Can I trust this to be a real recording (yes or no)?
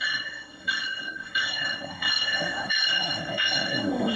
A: no